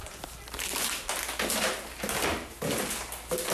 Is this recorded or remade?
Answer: recorded